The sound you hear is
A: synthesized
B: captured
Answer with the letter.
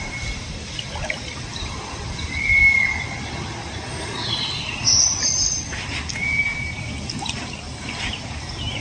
B